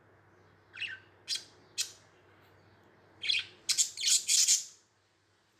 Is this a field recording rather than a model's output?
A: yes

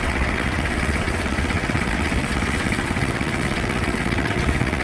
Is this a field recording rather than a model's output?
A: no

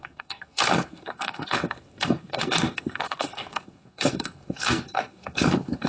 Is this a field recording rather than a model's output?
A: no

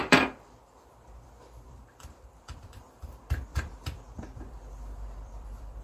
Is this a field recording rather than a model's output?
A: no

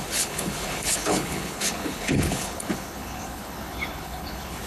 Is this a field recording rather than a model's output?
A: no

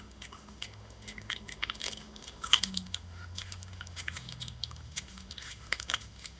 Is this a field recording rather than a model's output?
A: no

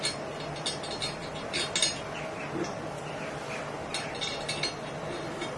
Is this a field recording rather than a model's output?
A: yes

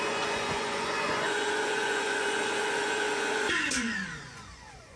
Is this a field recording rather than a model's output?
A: no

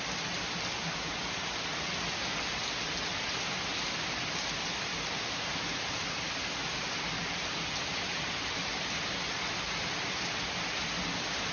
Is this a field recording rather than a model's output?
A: yes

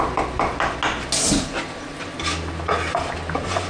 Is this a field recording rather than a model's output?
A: yes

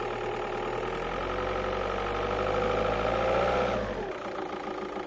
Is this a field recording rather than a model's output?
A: yes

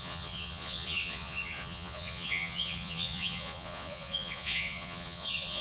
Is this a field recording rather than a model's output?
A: no